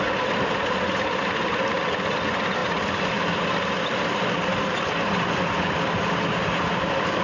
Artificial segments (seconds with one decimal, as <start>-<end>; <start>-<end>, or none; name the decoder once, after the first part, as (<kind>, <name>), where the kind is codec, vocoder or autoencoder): none